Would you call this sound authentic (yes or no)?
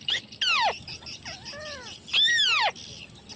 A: yes